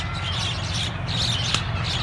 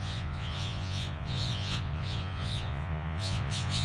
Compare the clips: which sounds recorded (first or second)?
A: first